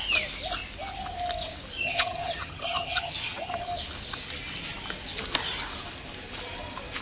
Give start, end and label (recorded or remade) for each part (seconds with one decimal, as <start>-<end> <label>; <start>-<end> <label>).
0.0-1.8 recorded; 1.8-3.6 remade; 3.6-7.0 recorded